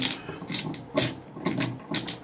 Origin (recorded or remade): recorded